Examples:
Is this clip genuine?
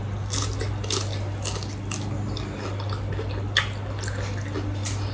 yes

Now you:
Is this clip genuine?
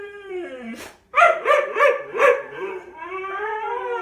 no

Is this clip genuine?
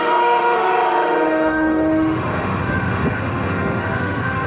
no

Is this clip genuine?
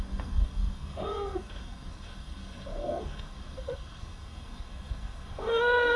no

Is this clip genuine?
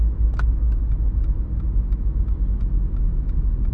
yes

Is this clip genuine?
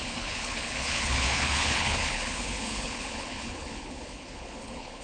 no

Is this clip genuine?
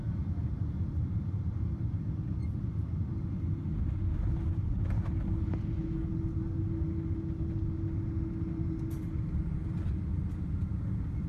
yes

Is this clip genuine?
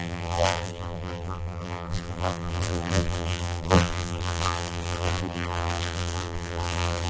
no